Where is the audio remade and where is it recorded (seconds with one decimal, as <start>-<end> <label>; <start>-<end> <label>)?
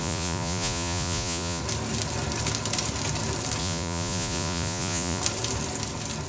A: 0.0-1.6 remade; 1.6-3.6 recorded; 3.6-5.2 remade; 5.2-6.3 recorded